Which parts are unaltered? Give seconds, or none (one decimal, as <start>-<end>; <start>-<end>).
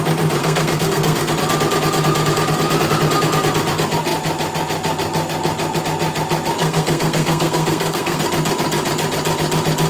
0.0-0.4; 1.3-6.6; 8.2-9.9